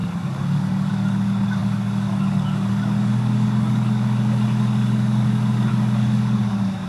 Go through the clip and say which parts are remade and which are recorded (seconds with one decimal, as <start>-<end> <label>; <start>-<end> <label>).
0.0-6.9 remade